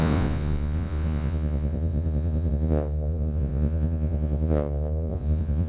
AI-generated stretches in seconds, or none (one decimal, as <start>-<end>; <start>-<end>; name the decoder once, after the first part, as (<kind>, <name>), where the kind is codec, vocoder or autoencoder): 0.0-5.7 (vocoder, Vocos)